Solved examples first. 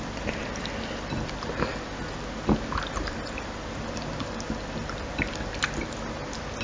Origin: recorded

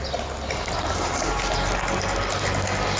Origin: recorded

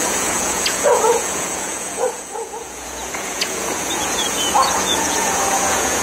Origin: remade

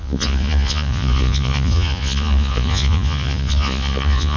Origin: remade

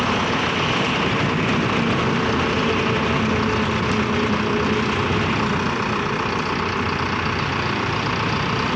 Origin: recorded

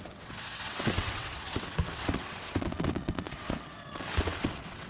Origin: remade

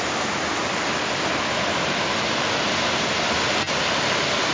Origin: recorded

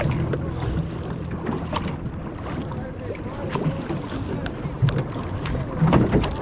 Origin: recorded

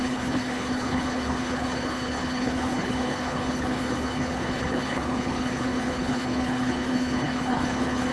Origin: remade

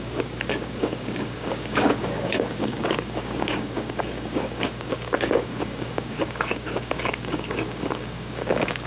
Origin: remade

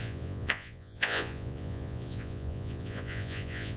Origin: remade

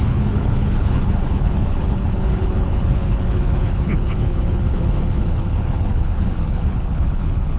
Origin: remade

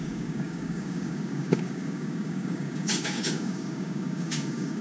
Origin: remade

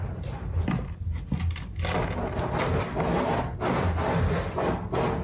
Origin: recorded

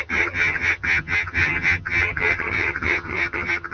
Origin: remade